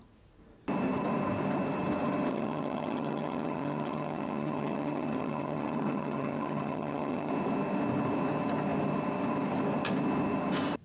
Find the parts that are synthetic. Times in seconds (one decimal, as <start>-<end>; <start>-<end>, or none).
2.3-7.3